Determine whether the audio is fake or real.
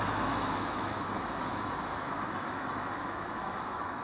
fake